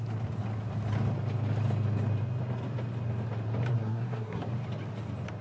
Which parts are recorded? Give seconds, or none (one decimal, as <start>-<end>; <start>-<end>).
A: 0.0-3.7; 4.4-5.4